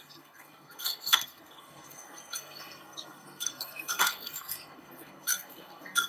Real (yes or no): no